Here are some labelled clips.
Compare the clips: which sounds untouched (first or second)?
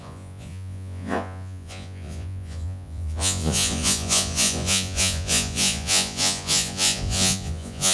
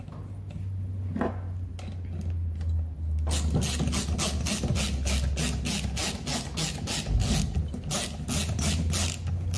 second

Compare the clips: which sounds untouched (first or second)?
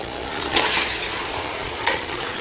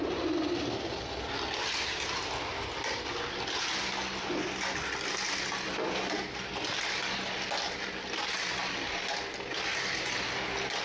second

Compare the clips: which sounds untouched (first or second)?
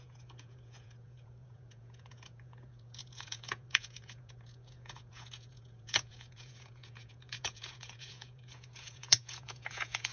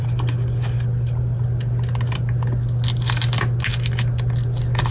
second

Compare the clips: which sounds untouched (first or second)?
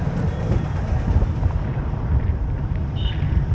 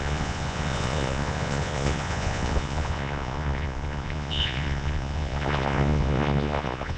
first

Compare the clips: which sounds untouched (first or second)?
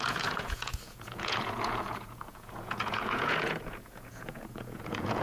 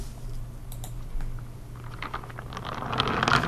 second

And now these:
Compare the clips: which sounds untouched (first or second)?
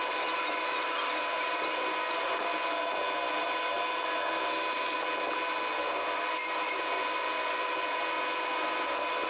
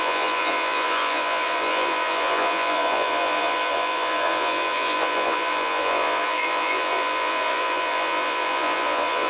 first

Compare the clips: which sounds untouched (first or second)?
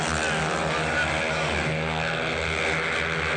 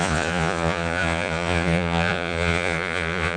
first